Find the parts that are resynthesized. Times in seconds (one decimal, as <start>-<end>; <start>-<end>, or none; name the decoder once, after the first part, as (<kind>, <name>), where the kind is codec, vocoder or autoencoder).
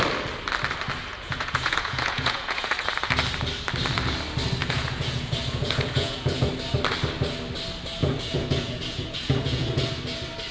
1.1-2.7 (vocoder, Vocos); 4.6-6.5; 8.0-9.9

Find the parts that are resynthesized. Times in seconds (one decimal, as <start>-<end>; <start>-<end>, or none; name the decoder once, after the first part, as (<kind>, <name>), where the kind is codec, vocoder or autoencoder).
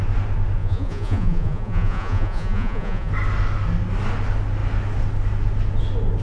0.6-3.1 (vocoder, Vocos)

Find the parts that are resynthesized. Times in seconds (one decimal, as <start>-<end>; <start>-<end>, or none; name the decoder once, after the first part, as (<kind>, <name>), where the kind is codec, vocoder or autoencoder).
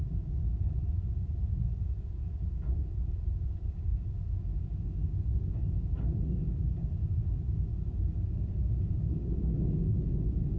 none